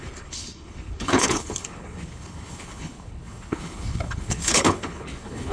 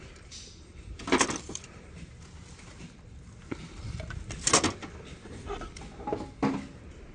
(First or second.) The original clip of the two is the second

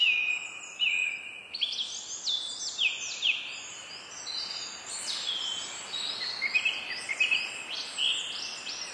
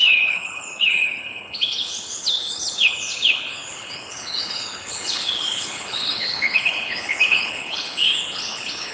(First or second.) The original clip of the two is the first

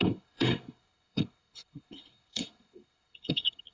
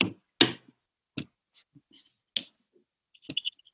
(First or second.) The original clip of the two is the second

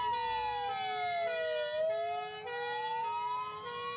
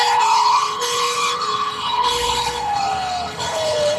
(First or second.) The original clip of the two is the first